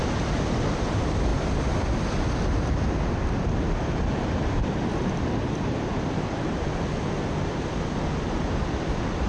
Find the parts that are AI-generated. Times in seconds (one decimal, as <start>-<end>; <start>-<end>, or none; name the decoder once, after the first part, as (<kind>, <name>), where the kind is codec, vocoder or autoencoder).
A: none